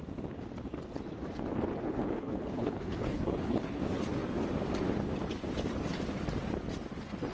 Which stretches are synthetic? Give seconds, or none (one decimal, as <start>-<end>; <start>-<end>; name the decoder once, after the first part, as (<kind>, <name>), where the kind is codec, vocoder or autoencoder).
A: 1.8-3.8 (codec, HILCodec)